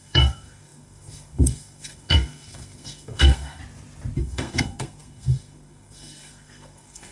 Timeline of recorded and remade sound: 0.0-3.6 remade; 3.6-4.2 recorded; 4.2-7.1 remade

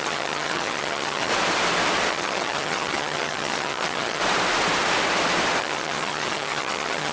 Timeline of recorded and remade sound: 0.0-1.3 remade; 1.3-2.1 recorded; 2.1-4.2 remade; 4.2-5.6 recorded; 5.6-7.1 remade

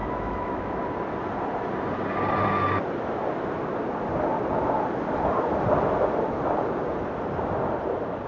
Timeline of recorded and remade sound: 0.0-0.9 remade; 0.9-8.3 recorded

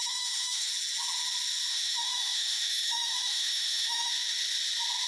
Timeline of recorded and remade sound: 0.0-0.7 remade; 0.7-1.7 recorded; 1.7-4.1 remade; 4.1-5.1 recorded

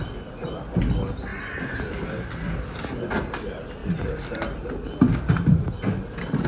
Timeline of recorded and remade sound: 0.0-1.3 recorded; 1.3-2.7 remade; 2.7-6.5 recorded